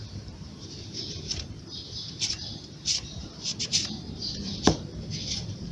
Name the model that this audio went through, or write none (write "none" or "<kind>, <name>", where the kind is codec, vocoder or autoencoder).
vocoder, BigVGAN v2